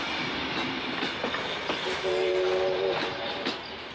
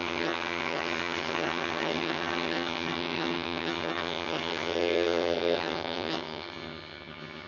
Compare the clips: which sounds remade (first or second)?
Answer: second